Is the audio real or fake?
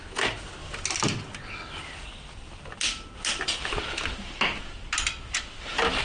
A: real